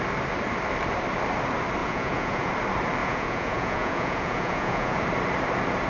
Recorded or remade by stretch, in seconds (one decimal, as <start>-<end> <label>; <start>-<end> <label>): 0.0-1.8 recorded; 1.8-2.5 remade; 2.5-3.0 recorded; 3.0-5.0 remade; 5.0-5.9 recorded